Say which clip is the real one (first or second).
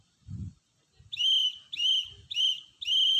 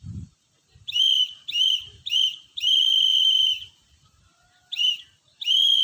first